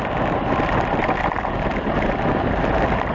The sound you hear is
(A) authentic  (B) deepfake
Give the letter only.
A